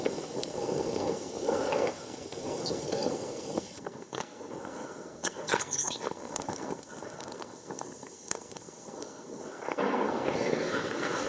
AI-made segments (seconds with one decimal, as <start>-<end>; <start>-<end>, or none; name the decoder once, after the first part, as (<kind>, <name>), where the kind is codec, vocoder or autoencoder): 0.0-11.3 (codec, SNAC)